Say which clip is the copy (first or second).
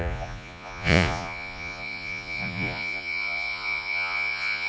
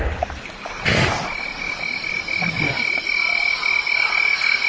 first